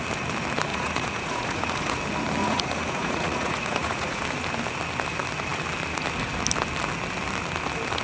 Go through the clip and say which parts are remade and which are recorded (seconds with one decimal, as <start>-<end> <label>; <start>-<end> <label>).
0.0-0.7 recorded; 0.7-2.0 remade; 2.0-2.4 recorded; 2.4-4.2 remade; 4.2-8.0 recorded